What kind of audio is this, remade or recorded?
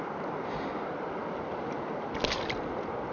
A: recorded